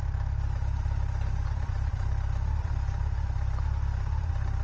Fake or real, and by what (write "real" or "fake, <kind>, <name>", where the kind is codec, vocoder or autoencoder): fake, vocoder, BigVGAN v2